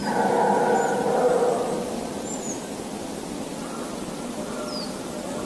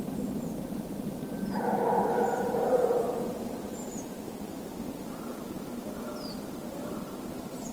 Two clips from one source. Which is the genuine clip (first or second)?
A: first